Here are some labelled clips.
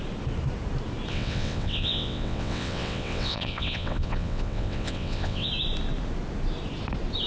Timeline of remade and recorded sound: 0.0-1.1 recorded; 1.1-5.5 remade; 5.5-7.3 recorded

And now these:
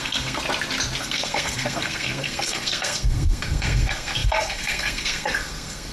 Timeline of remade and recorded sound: 0.0-0.4 remade; 0.4-1.0 recorded; 1.0-5.9 remade

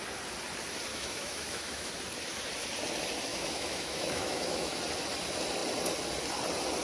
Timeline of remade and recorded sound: 0.0-0.9 recorded; 0.9-1.9 remade; 1.9-3.3 recorded; 3.3-4.8 remade; 4.8-6.8 recorded

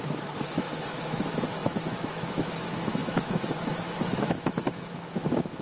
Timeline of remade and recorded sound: 0.0-5.6 remade

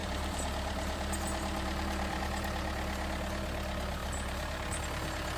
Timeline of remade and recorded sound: 0.0-2.2 remade; 2.2-4.0 recorded; 4.0-4.8 remade; 4.8-5.4 recorded

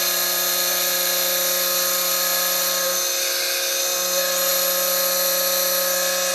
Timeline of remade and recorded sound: 0.0-6.3 recorded

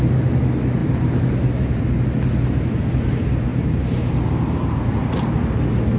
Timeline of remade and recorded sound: 0.0-0.8 recorded; 0.8-1.8 remade; 1.8-3.5 recorded; 3.5-4.9 remade; 4.9-6.0 recorded